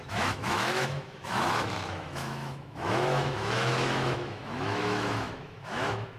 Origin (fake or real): fake